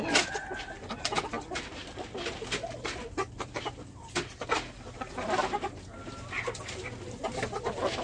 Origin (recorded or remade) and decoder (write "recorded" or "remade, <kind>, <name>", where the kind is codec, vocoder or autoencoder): recorded